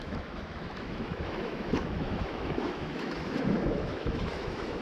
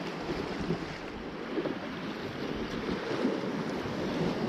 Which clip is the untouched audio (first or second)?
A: second